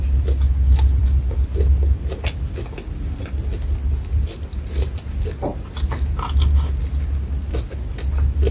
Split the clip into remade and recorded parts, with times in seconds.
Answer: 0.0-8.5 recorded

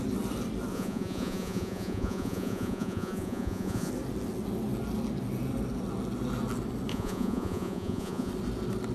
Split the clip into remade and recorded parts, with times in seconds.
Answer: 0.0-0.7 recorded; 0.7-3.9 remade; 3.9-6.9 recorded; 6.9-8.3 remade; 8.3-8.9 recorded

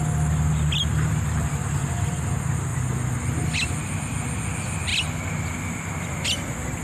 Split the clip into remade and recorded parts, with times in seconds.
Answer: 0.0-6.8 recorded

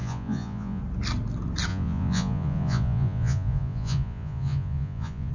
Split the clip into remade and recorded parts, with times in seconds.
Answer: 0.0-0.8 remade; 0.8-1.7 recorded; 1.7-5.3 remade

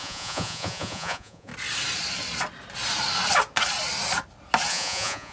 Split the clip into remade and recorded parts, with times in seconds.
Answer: 0.0-1.5 remade; 1.5-4.7 recorded; 4.7-5.3 remade

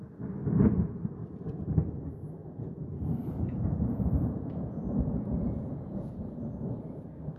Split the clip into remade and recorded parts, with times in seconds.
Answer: 0.0-2.4 recorded; 2.4-6.7 remade; 6.7-7.4 recorded

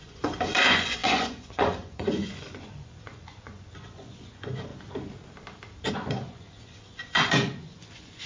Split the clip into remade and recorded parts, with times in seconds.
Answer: 0.0-4.7 remade; 4.7-5.9 recorded; 5.9-8.3 remade